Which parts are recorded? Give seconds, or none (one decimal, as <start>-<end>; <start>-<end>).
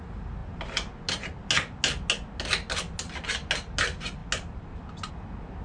0.0-5.6